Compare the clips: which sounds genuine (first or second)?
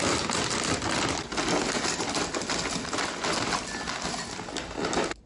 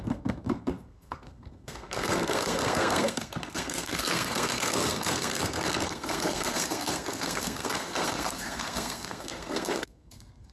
first